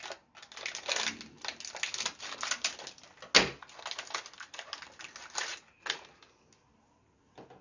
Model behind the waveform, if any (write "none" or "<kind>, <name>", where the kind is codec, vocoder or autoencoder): none